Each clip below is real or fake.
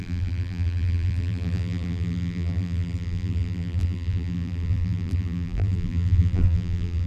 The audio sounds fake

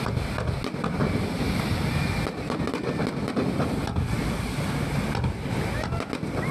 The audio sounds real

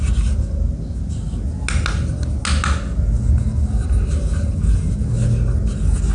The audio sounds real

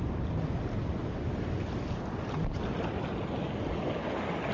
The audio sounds real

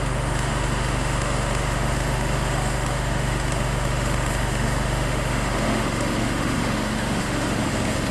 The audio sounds fake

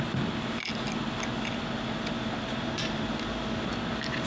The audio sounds real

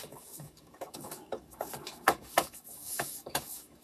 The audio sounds fake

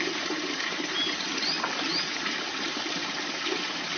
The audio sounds fake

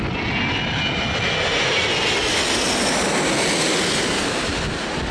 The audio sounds real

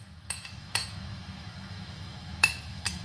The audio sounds fake